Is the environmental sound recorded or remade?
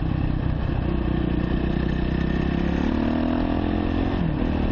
recorded